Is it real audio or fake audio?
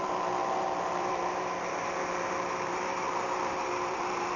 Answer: fake